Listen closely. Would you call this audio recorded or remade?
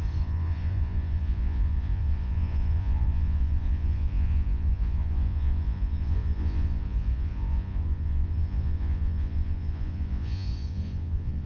remade